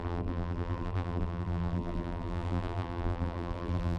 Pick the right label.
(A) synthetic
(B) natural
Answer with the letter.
A